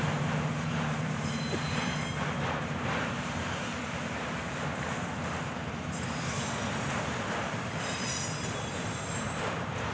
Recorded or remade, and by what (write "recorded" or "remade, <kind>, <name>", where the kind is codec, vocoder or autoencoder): remade, vocoder, BigVGAN v2